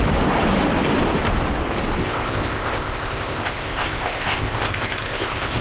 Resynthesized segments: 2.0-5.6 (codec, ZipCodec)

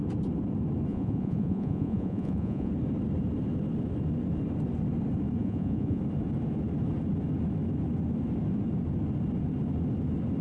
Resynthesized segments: 0.9-2.7 (vocoder, Vocos); 5.4-6.0

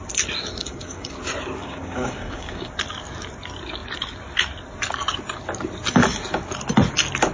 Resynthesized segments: 0.6-1.1 (codec, DAC); 1.6-2.7